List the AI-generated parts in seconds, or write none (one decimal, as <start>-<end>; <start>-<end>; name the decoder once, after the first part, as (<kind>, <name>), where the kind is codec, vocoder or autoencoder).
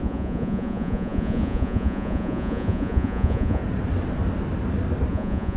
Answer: 0.0-3.6 (vocoder, Vocos); 5.1-5.6